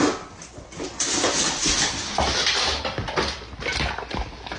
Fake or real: real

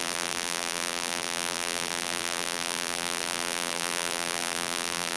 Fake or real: fake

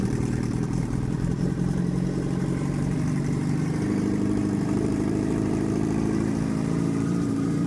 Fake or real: fake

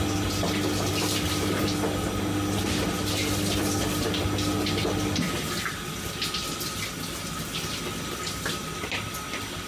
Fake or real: real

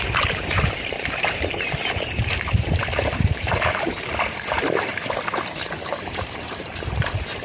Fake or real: fake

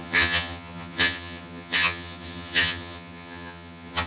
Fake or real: fake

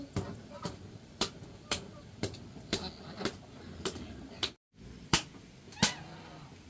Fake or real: real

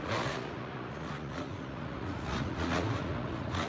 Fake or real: fake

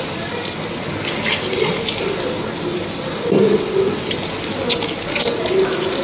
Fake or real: real